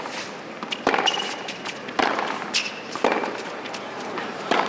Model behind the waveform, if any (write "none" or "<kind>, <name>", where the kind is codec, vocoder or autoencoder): none